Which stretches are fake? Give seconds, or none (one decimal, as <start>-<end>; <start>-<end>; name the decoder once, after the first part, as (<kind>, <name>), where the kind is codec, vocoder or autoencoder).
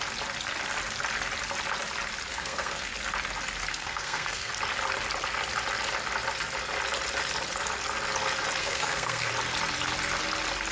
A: 2.3-2.9 (codec, SNAC); 3.7-4.5; 8.6-9.3